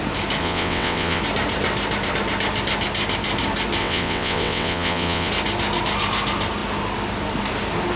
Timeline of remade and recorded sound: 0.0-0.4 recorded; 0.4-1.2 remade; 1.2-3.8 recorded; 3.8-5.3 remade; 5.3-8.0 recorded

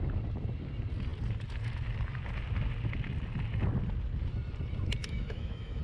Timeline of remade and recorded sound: 0.0-5.0 recorded; 5.0-5.8 remade